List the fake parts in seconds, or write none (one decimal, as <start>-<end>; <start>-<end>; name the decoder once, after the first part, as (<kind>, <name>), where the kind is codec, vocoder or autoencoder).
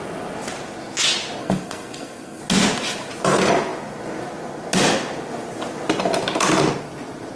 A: 1.4-2.4 (codec, SNAC)